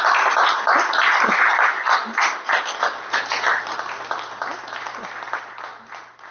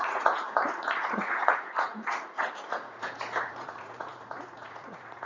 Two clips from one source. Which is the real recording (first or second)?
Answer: first